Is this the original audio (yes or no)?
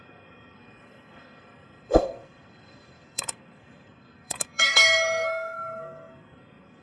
no